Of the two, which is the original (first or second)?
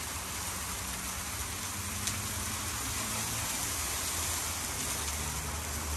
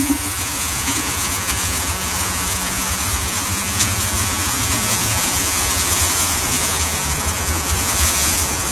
first